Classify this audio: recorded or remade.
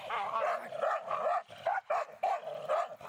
recorded